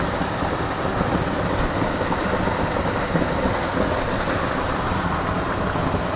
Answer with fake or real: real